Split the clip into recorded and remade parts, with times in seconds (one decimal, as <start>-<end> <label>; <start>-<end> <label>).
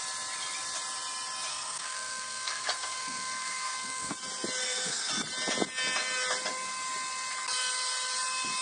0.0-1.5 recorded; 1.5-4.1 remade; 4.1-4.6 recorded; 4.6-5.1 remade; 5.1-8.6 recorded